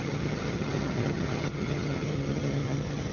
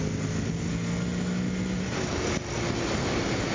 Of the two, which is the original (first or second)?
second